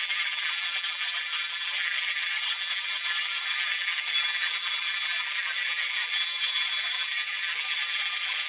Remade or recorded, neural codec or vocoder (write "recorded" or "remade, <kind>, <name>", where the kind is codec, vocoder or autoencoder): remade, vocoder, BigVGAN v2